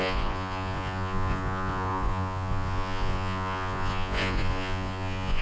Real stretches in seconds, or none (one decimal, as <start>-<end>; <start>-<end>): none